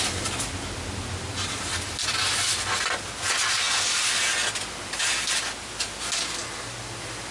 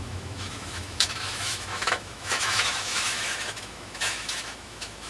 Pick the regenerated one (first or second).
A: second